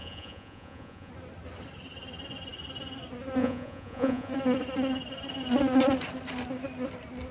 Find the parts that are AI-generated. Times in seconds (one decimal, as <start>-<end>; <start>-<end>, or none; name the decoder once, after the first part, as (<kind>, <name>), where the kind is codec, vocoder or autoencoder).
0.0-1.1 (vocoder, Vocos); 3.4-4.3